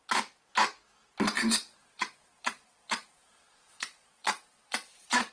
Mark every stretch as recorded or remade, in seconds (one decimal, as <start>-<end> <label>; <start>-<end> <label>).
0.0-1.7 recorded; 1.7-5.3 remade